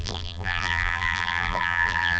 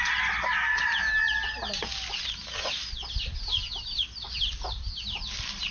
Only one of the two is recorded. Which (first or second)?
second